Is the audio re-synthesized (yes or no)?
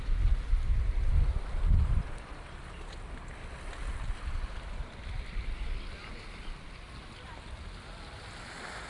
no